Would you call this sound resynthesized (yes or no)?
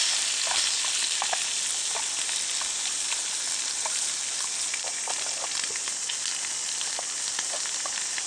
no